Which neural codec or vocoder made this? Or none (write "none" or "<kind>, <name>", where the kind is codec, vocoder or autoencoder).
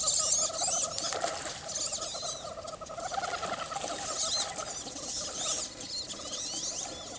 none